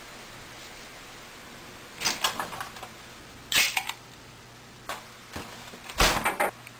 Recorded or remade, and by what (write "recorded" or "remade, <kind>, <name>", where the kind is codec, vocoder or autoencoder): recorded